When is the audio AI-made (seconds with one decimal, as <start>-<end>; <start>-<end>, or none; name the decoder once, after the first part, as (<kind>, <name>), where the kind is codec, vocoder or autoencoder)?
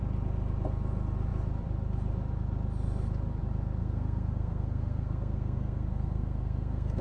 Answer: 3.8-7.0 (codec, SNAC)